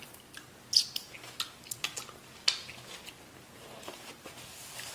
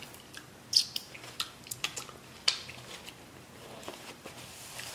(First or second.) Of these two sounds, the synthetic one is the second